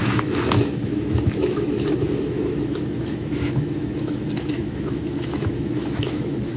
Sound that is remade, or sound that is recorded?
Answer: remade